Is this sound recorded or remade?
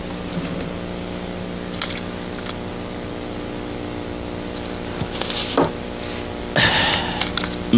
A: recorded